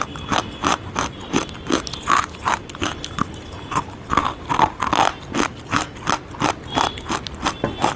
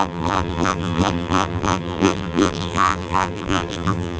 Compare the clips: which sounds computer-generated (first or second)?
second